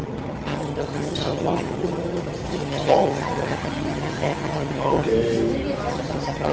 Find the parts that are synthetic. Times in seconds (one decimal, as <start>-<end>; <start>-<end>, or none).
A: 0.0-5.1; 5.9-6.5